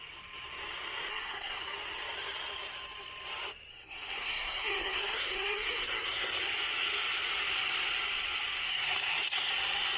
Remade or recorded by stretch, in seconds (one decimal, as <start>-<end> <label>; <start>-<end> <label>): 0.0-1.1 recorded; 1.1-1.6 remade; 1.6-3.7 recorded; 3.7-6.4 remade; 6.4-8.7 recorded; 8.7-9.5 remade; 9.5-10.0 recorded